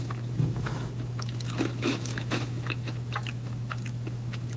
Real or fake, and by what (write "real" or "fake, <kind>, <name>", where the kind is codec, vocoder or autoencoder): fake, autoencoder, DAC-VAE